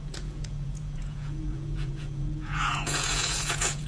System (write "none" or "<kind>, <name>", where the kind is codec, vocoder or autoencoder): vocoder, Vocos